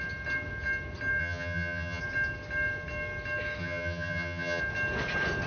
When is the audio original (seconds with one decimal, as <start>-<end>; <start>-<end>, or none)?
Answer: 0.0-1.2; 2.0-3.6; 4.6-5.5